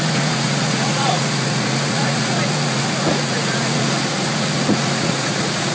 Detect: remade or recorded remade